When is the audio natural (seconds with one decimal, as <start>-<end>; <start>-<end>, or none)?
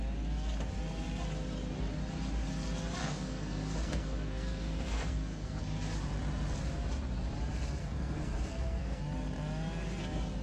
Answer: 0.0-3.0; 5.6-7.8; 9.0-10.4